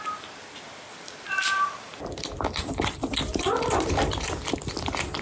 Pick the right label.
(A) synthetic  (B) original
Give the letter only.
A